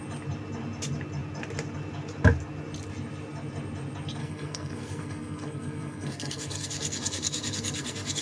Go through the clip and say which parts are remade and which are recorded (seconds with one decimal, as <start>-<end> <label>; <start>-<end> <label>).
0.0-4.2 recorded; 4.2-8.2 remade